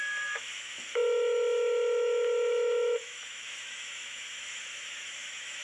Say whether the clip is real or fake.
fake